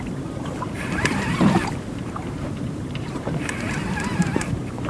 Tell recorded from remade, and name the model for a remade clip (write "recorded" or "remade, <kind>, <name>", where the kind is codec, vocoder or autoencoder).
remade, vocoder, BigVGAN v2